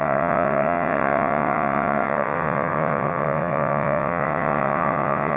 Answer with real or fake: fake